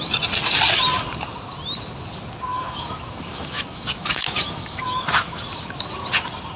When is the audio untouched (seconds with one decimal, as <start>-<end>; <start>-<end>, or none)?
0.0-2.5; 5.4-6.6